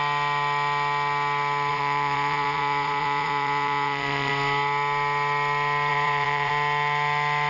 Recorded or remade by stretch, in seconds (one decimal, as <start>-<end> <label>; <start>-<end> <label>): 0.0-1.7 recorded; 1.7-4.3 remade; 4.3-5.9 recorded; 5.9-6.5 remade; 6.5-7.5 recorded